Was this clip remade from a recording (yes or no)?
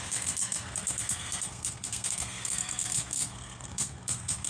yes